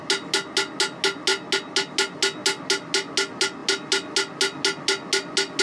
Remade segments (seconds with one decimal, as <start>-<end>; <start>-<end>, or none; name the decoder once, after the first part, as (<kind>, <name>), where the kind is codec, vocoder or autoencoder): none